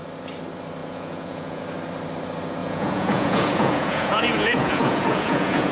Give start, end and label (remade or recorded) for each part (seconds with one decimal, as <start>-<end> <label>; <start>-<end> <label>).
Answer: 0.0-0.8 recorded; 0.8-1.6 remade; 1.6-2.6 recorded; 2.6-5.7 remade